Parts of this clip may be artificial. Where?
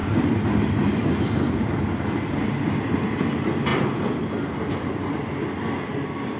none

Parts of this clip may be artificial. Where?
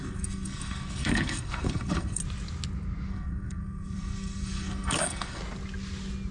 0.0-2.2; 3.1-5.4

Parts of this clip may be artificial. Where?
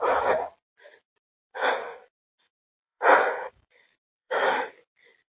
1.5-4.7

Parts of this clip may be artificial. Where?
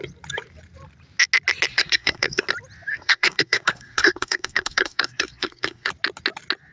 1.7-2.5; 2.9-5.9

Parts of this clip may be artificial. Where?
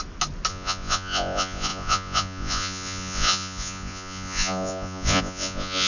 0.5-5.9